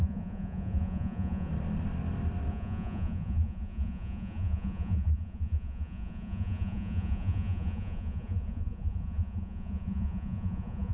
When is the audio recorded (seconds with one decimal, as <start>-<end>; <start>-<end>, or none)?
1.5-2.5